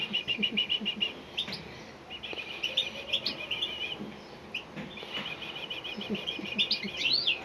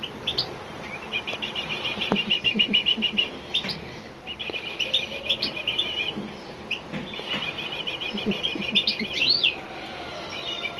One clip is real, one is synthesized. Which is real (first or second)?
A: first